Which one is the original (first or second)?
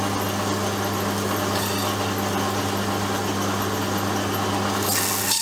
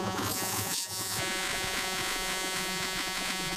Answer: first